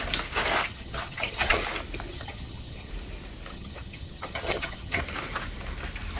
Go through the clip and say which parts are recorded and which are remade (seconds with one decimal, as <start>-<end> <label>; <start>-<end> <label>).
0.0-0.7 recorded; 0.7-1.6 remade; 1.6-2.1 recorded; 2.1-2.9 remade; 2.9-3.5 recorded; 3.5-5.0 remade; 5.0-6.2 recorded

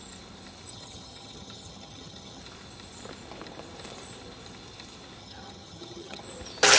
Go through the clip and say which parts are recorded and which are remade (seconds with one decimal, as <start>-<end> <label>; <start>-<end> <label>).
0.0-0.7 recorded; 0.7-2.4 remade; 2.4-5.2 recorded; 5.2-6.2 remade; 6.2-6.8 recorded

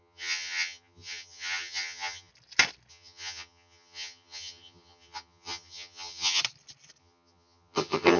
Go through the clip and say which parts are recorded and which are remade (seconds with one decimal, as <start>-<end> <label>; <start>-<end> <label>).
0.0-2.3 remade; 2.3-2.9 recorded; 2.9-6.4 remade; 6.4-7.0 recorded; 7.0-8.2 remade